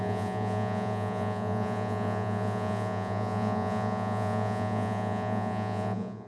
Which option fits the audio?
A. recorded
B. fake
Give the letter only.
B